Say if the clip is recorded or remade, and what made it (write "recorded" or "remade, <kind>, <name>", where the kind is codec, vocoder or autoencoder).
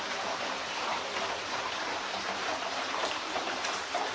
remade, vocoder, BigVGAN v2